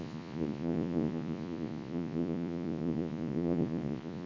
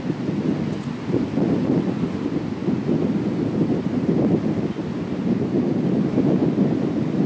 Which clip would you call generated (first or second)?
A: first